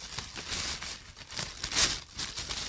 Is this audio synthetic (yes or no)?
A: no